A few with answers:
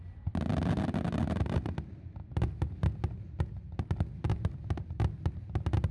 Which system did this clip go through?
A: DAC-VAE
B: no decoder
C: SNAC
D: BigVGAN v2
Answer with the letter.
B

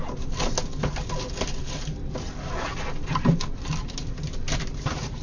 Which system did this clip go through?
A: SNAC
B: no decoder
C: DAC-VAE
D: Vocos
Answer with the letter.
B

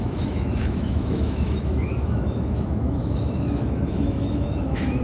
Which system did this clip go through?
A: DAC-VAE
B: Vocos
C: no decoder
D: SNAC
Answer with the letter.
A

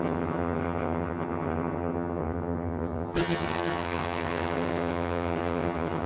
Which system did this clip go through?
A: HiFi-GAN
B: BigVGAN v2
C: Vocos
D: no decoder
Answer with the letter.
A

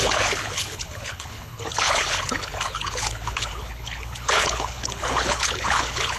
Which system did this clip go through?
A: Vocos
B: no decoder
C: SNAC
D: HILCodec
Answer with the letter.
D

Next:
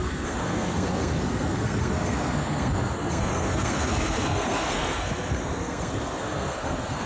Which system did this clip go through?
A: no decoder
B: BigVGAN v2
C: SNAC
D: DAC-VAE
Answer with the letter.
C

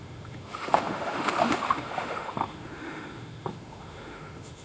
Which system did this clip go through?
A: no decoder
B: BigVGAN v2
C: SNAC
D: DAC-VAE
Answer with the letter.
D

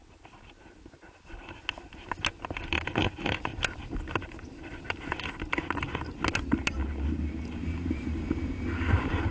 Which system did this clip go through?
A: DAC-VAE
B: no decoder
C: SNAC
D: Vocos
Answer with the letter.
B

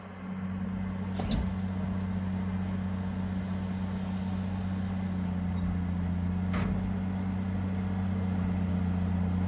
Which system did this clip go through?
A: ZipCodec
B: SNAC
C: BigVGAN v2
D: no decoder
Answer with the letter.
D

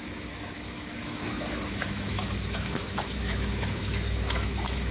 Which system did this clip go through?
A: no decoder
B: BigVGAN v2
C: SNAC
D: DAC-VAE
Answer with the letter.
D